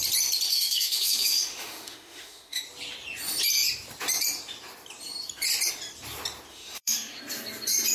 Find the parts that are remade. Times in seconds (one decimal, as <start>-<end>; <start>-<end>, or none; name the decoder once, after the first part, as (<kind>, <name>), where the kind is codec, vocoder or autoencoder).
0.5-2.6 (autoencoder, DAC-VAE); 6.5-7.2